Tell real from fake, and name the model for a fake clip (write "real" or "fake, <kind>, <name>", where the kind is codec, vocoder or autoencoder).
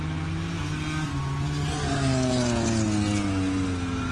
real